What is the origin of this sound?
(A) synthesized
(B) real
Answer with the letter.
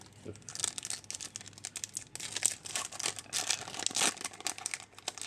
B